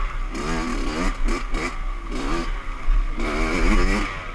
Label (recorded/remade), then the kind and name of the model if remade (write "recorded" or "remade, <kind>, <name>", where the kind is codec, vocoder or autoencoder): recorded